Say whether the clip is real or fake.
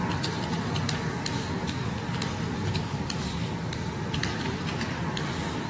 real